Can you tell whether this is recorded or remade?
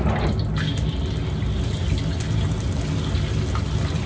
recorded